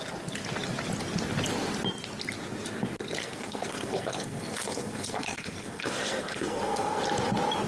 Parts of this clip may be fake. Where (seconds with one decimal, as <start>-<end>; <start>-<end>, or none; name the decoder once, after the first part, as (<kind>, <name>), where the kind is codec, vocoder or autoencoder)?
3.2-7.0 (codec, SNAC)